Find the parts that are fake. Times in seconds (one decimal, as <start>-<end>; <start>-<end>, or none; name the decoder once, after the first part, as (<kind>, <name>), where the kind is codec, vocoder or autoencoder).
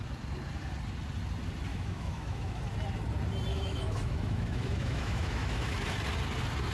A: 1.7-2.6 (autoencoder, DAC-VAE); 3.5-5.9